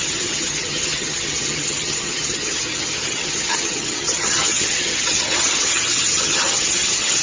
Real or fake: fake